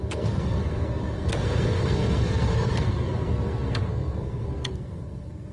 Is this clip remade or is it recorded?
remade